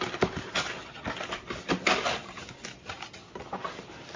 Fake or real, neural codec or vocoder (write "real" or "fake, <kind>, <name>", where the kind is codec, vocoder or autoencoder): real